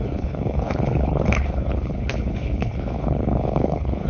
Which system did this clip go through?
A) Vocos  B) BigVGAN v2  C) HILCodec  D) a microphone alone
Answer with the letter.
C